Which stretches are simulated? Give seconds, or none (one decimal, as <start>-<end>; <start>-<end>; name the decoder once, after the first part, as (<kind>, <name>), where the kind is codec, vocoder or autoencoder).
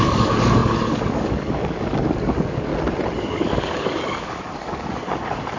0.0-2.7 (codec, DAC); 3.2-5.6